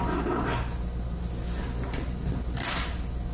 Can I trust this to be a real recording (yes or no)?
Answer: yes